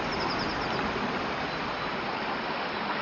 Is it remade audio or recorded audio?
recorded